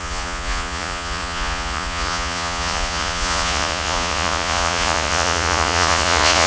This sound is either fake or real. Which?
fake